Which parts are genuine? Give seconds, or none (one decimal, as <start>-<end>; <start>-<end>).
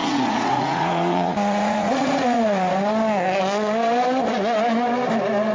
2.7-5.5